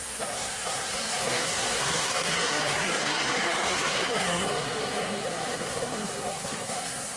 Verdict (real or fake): fake